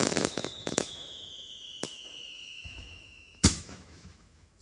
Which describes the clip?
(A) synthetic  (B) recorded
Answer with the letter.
A